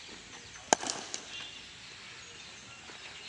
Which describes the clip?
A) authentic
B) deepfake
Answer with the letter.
A